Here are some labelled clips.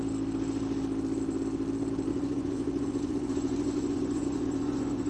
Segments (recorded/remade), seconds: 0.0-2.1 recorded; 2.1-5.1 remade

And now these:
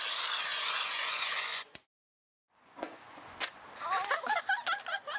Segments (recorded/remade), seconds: 0.0-0.5 recorded; 0.5-3.6 remade; 3.6-5.2 recorded

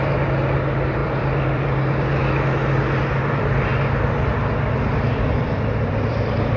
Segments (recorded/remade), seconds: 0.0-2.2 remade; 2.2-3.3 recorded; 3.3-3.7 remade; 3.7-4.5 recorded; 4.5-6.6 remade

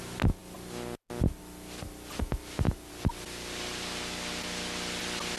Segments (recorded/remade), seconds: 0.0-5.4 recorded

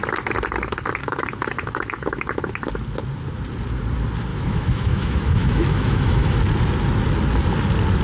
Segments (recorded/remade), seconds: 0.0-1.0 recorded; 1.0-2.7 remade; 2.7-4.3 recorded; 4.3-6.4 remade; 6.4-8.0 recorded

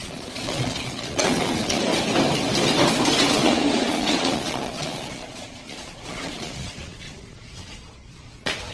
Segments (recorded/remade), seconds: 0.0-1.9 remade; 1.9-3.3 recorded; 3.3-8.7 remade

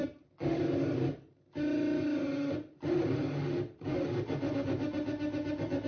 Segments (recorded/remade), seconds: 0.0-5.9 recorded